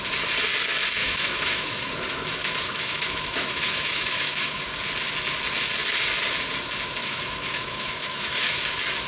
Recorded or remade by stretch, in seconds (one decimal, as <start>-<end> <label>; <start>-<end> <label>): 0.0-1.0 recorded; 1.0-1.9 remade; 1.9-2.4 recorded; 2.4-4.6 remade; 4.6-7.0 recorded; 7.0-8.6 remade; 8.6-9.1 recorded